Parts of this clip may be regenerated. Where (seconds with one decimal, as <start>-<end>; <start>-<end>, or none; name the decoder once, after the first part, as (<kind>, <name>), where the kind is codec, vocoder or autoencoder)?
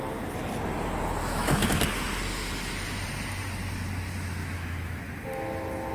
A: 1.2-1.8 (autoencoder, DAC-VAE); 4.4-5.0